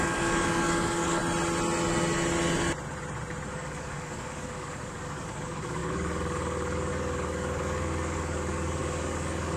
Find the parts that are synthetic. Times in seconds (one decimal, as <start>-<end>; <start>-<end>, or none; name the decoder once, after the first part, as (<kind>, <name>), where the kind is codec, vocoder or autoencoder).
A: 0.0-1.2 (codec, DAC); 3.5-9.6